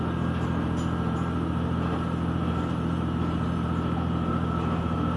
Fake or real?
real